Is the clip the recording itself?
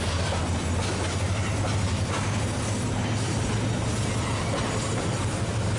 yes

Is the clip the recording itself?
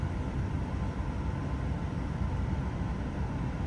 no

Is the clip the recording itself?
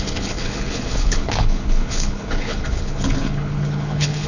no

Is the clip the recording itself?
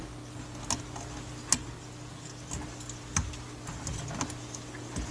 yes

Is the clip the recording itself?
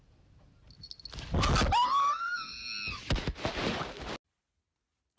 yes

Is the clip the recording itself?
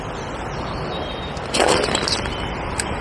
no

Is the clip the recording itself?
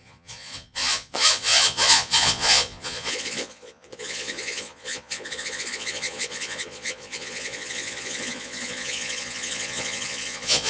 no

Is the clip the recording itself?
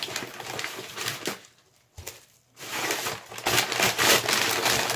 yes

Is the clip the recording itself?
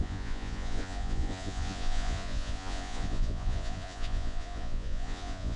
no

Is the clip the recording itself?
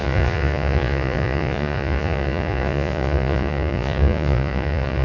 no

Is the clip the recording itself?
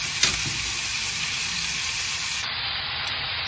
no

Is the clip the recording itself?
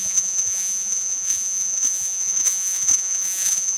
no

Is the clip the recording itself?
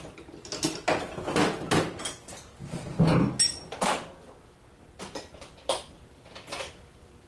yes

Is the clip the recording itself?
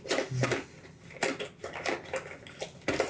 yes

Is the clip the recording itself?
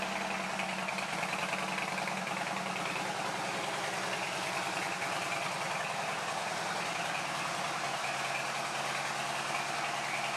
yes